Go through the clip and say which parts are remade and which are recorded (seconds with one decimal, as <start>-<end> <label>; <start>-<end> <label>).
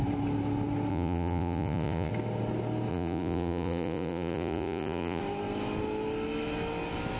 0.0-0.9 recorded; 0.9-2.1 remade; 2.1-2.9 recorded; 2.9-5.2 remade; 5.2-7.2 recorded